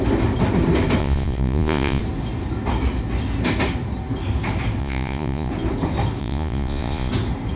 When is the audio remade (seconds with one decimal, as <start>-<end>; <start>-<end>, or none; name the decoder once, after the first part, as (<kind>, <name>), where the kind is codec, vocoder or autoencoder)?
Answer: 1.0-2.0 (vocoder, Vocos); 4.8-5.5; 6.2-7.1